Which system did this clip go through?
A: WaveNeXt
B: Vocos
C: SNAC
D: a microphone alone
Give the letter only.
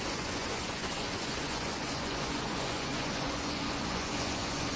B